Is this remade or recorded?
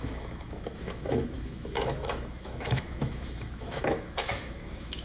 remade